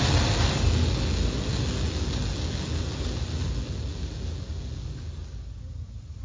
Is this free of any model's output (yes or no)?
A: yes